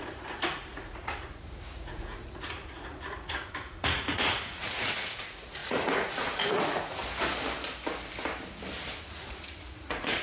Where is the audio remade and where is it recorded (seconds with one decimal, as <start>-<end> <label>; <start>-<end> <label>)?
0.0-7.0 remade; 7.0-9.0 recorded; 9.0-10.2 remade